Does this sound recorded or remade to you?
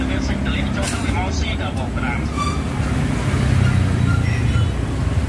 recorded